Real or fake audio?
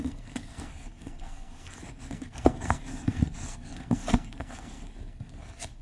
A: fake